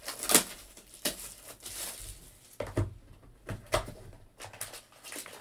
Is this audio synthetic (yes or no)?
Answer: no